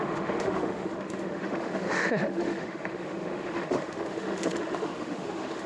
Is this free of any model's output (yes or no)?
no